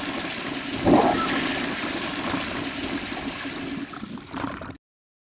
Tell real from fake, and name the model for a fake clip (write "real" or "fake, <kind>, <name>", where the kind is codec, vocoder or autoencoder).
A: real